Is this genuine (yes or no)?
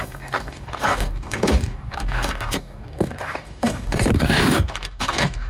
no